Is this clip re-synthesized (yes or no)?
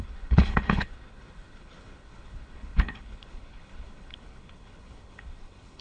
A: yes